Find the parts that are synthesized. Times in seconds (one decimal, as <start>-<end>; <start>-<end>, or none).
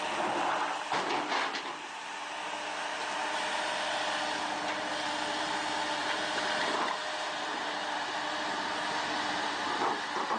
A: none